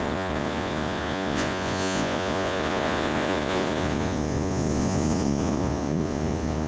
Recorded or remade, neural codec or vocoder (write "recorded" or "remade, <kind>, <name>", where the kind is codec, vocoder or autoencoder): remade, vocoder, Vocos